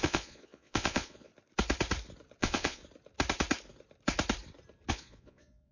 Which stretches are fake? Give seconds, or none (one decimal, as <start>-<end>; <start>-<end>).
0.0-1.3; 2.4-2.8; 4.9-5.7